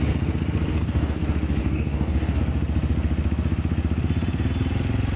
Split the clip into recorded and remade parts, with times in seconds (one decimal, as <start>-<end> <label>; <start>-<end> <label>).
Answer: 0.0-0.7 recorded; 0.7-1.2 remade; 1.2-1.6 recorded; 1.6-2.4 remade; 2.4-5.2 recorded